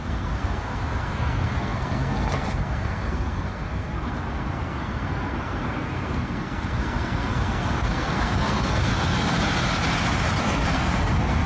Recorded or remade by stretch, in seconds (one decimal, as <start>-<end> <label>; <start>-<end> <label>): 0.0-8.9 remade; 8.9-10.4 recorded; 10.4-11.5 remade